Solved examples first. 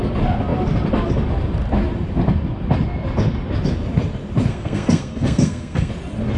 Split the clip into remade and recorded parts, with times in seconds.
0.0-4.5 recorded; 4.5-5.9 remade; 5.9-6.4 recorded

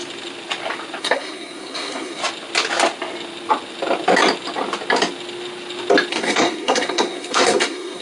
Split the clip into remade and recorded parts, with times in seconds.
0.0-1.0 recorded; 1.0-2.2 remade; 2.2-6.1 recorded; 6.1-8.0 remade

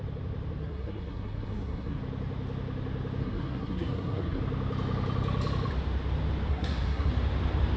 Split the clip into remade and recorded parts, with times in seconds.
0.0-0.6 recorded; 0.6-2.0 remade; 2.0-3.2 recorded; 3.2-4.4 remade; 4.4-6.5 recorded; 6.5-7.1 remade; 7.1-7.8 recorded